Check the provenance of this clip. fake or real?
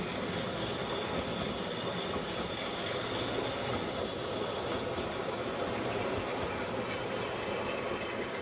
real